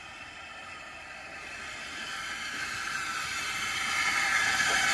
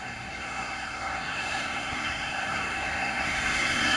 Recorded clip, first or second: first